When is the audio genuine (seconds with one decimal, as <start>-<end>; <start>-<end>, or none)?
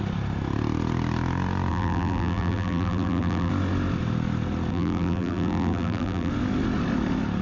0.0-1.7; 3.5-4.7; 6.3-7.4